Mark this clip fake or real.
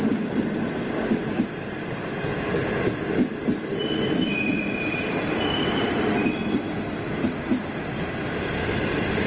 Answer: real